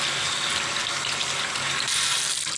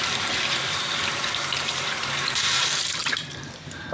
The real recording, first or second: first